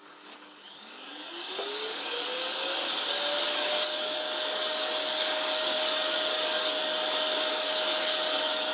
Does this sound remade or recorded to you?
remade